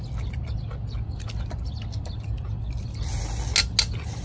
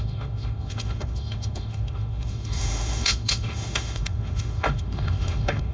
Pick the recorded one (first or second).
first